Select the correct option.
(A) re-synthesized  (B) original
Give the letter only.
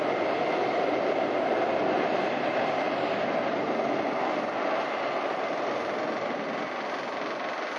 B